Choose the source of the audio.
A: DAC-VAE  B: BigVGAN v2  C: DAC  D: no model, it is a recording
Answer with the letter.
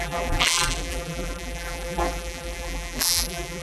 B